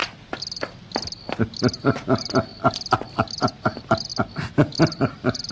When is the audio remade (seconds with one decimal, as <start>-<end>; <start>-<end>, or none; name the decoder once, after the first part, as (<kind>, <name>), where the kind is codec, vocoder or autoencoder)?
1.8-2.5 (vocoder, BigVGAN v2); 3.5-4.1; 5.0-5.5